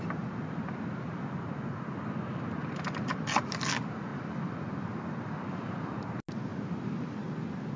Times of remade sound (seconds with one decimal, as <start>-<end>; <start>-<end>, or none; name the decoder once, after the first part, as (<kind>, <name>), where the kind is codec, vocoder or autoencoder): 2.6-3.1 (vocoder, BigVGAN v2); 4.1-5.9; 6.5-7.3